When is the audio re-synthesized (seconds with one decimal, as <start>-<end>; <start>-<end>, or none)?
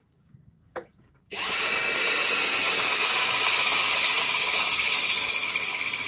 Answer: 0.0-6.1